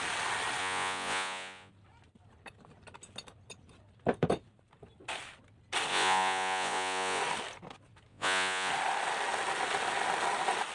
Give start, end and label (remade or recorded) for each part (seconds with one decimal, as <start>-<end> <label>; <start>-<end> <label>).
0.0-0.6 recorded; 0.6-1.7 remade; 1.7-5.9 recorded; 5.9-7.2 remade; 7.2-8.1 recorded; 8.1-8.7 remade; 8.7-10.7 recorded